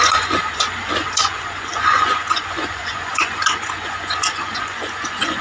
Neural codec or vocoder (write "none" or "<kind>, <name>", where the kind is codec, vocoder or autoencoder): vocoder, Vocos